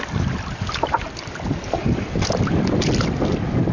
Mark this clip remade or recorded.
recorded